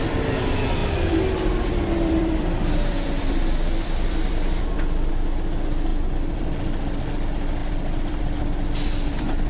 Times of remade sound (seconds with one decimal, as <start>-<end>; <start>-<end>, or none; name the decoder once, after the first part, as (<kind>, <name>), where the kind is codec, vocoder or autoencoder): 0.8-5.1 (vocoder, BigVGAN v2); 5.9-6.4; 7.6-9.5